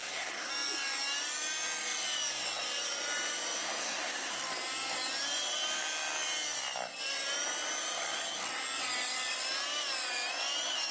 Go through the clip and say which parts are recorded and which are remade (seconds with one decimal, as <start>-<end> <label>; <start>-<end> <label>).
0.0-0.5 remade; 0.5-3.8 recorded; 3.8-4.3 remade; 4.3-10.9 recorded